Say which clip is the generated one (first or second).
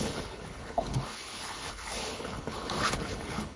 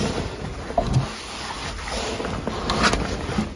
first